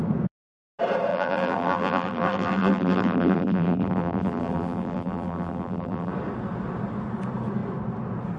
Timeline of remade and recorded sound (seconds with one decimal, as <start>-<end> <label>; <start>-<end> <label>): 0.0-1.1 recorded; 1.1-6.1 remade; 6.1-8.4 recorded